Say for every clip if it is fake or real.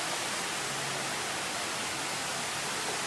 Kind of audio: real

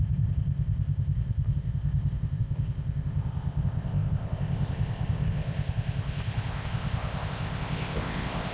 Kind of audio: fake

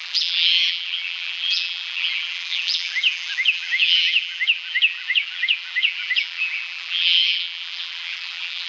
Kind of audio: fake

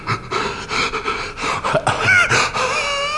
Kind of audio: real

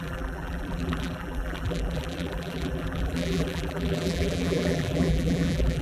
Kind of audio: fake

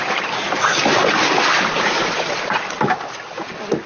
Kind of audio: real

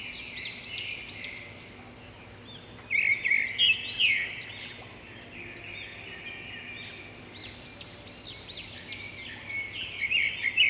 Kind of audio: real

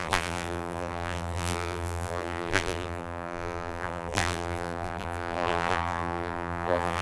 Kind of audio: fake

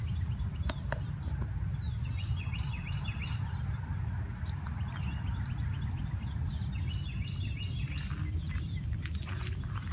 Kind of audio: real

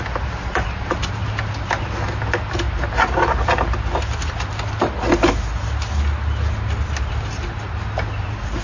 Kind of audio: real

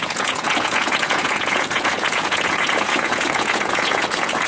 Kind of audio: fake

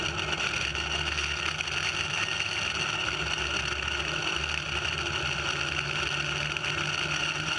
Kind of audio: real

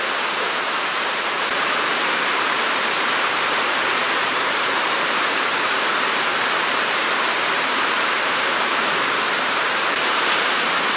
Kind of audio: fake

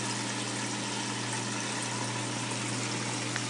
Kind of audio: real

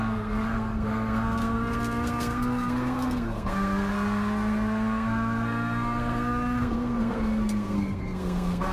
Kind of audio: fake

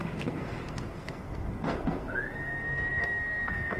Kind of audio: fake